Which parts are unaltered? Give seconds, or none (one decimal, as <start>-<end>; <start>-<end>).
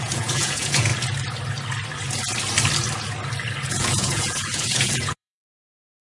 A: 0.9-3.7